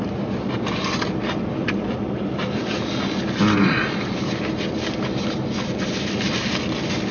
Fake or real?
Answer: real